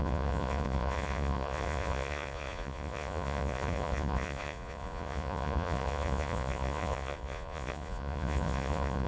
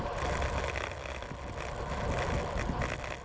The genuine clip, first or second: second